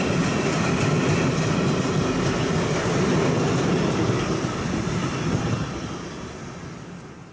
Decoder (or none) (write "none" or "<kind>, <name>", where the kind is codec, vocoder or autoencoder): none